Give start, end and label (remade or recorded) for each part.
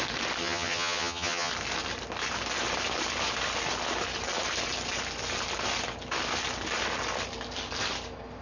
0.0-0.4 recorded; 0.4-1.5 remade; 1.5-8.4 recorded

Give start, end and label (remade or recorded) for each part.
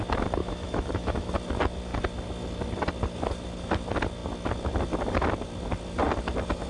0.0-0.4 recorded; 0.4-1.3 remade; 1.3-6.7 recorded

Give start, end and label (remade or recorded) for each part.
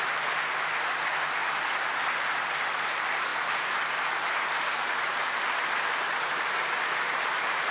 0.0-1.4 recorded; 1.4-2.2 remade; 2.2-7.7 recorded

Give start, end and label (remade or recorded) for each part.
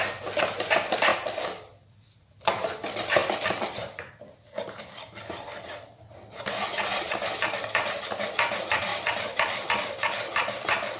0.0-3.2 recorded; 3.2-4.1 remade; 4.1-8.9 recorded; 8.9-9.7 remade; 9.7-11.0 recorded